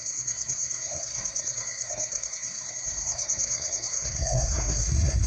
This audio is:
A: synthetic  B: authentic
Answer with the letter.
A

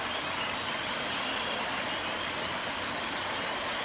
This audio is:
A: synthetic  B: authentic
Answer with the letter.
B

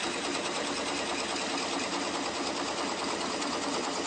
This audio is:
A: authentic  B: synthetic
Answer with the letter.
A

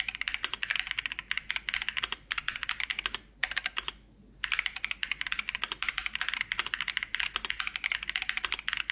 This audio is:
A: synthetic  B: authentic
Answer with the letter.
B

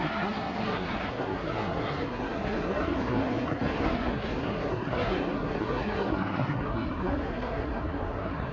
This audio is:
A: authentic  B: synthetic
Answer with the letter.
B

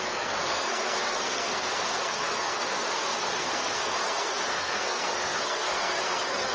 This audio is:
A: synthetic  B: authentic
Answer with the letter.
A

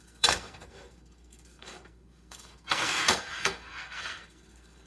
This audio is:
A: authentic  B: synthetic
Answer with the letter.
B